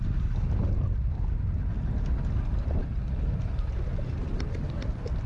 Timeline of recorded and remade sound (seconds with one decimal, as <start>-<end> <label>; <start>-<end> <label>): 0.0-5.3 recorded

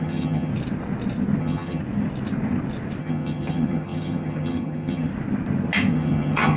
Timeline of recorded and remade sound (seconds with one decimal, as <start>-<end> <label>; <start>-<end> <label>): 0.0-0.5 remade; 0.5-1.4 recorded; 1.4-1.8 remade; 1.8-3.0 recorded; 3.0-5.1 remade; 5.1-5.9 recorded; 5.9-6.6 remade

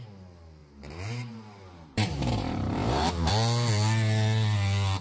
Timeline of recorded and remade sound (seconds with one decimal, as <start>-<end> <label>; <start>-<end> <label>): 0.0-0.6 recorded; 0.6-3.3 remade; 3.3-5.0 recorded